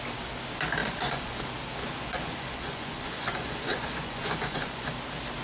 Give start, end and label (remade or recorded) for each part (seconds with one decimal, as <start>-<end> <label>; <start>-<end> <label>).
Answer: 0.0-0.8 recorded; 0.8-1.4 remade; 1.4-1.8 recorded; 1.8-4.9 remade; 4.9-5.4 recorded